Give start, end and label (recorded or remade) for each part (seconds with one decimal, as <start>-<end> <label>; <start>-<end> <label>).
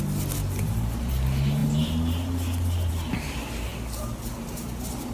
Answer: 0.0-5.1 recorded